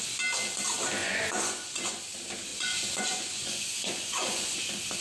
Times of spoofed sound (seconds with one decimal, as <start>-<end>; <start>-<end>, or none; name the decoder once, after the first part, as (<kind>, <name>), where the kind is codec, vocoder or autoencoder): 1.0-2.0 (vocoder, Vocos); 2.5-4.6